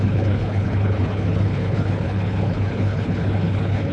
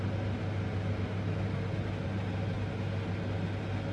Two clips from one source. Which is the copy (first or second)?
first